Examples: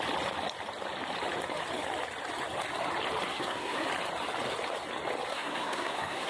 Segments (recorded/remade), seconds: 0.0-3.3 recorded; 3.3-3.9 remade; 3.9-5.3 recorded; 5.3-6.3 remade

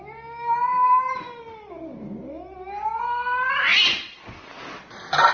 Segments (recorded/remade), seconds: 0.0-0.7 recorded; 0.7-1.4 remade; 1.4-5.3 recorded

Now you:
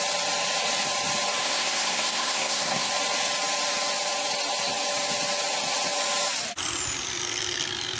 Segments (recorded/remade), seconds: 0.0-1.4 recorded; 1.4-2.9 remade; 2.9-8.0 recorded